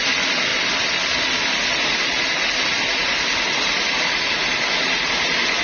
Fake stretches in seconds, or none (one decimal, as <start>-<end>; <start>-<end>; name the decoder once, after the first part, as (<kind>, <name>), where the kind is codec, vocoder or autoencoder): none